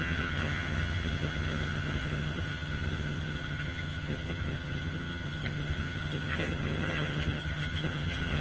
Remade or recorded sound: remade